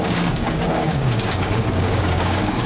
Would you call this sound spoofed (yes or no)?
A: yes